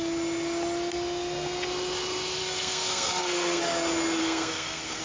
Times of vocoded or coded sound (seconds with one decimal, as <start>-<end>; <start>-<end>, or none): 2.4-3.6; 4.2-5.0